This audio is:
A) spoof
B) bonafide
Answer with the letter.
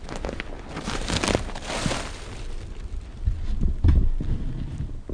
B